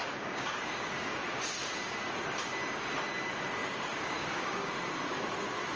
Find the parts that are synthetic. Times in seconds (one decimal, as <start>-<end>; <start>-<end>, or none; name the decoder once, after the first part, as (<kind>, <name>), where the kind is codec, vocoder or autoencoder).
0.0-1.4 (codec, DAC); 3.6-4.7

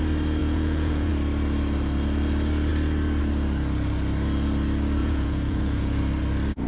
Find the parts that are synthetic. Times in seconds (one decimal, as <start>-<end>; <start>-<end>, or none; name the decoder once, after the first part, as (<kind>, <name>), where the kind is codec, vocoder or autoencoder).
0.4-1.1 (vocoder, Vocos); 5.0-6.0

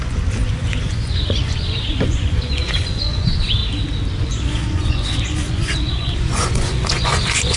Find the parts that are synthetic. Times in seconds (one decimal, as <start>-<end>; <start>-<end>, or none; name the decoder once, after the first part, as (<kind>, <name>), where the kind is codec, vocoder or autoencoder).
0.0-3.6 (vocoder, Vocos); 4.2-7.6

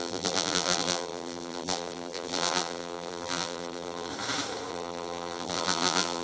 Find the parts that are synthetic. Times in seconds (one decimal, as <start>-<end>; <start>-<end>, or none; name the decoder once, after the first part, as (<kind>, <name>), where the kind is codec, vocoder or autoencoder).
0.0-4.1 (vocoder, BigVGAN v2); 4.7-6.2